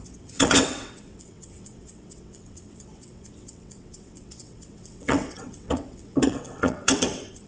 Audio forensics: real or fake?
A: fake